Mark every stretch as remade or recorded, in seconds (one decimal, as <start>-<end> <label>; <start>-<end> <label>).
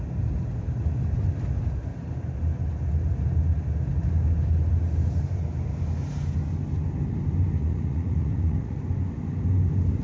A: 0.0-7.6 recorded; 7.6-8.8 remade; 8.8-10.0 recorded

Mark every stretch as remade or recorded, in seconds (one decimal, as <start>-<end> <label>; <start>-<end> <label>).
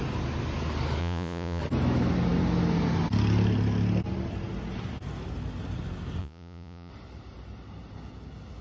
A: 0.0-1.0 recorded; 1.0-1.6 remade; 1.6-6.2 recorded; 6.2-6.9 remade; 6.9-8.6 recorded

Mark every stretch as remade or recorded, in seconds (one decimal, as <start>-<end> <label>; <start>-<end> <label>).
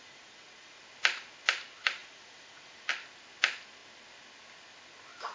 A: 0.0-0.8 remade; 0.8-2.0 recorded; 2.0-2.9 remade; 2.9-5.3 recorded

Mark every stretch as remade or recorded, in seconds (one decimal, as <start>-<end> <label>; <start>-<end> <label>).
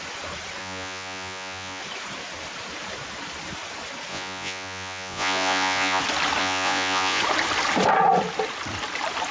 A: 0.0-0.6 recorded; 0.6-1.8 remade; 1.8-4.1 recorded; 4.1-6.0 remade; 6.0-6.4 recorded; 6.4-7.2 remade; 7.2-9.3 recorded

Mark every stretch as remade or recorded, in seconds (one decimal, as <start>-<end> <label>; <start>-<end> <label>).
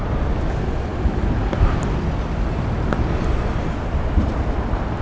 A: 0.0-5.0 recorded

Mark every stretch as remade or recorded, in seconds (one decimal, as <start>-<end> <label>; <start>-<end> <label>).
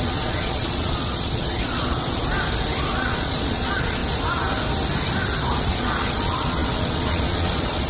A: 0.0-2.2 remade; 2.2-2.9 recorded; 2.9-4.0 remade; 4.0-5.6 recorded; 5.6-7.9 remade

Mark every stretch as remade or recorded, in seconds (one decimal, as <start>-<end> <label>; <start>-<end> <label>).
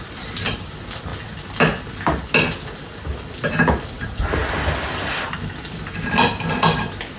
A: 0.0-7.2 recorded